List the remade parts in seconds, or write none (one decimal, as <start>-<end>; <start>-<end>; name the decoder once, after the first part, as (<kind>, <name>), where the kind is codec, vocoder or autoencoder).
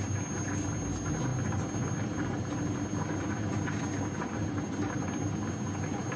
none